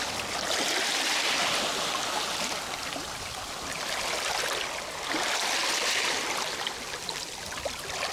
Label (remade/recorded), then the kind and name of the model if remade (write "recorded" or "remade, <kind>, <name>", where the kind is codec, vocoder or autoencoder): recorded